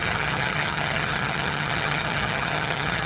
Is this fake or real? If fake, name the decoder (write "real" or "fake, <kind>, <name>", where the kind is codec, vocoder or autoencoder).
fake, vocoder, HiFi-GAN